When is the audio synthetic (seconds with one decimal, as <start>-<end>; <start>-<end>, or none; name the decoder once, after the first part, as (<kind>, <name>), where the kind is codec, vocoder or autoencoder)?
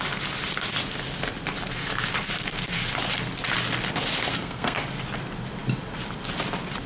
4.3-4.8 (codec, SNAC)